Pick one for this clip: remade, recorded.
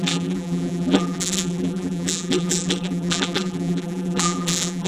remade